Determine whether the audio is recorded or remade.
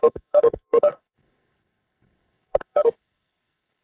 remade